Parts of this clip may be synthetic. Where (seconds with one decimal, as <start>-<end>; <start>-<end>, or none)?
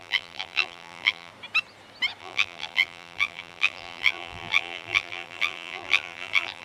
0.0-1.3; 2.2-6.6